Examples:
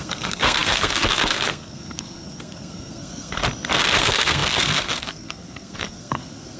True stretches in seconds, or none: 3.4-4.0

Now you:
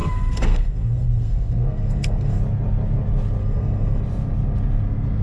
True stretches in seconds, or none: 2.4-3.4; 4.0-5.2

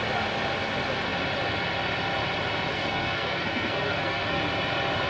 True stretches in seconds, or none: 0.0-2.7; 4.4-5.1

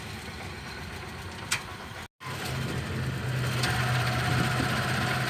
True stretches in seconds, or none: 0.0-5.3

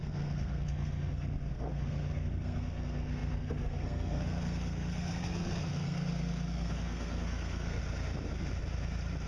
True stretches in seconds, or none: 7.8-9.3

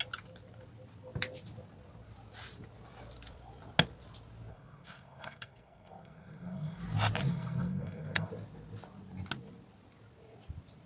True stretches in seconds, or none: 0.0-4.5; 6.8-7.3; 8.3-10.9

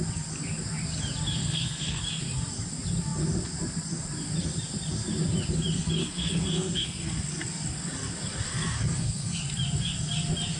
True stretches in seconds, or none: 0.0-1.4; 2.0-6.0; 7.1-8.5; 9.4-10.6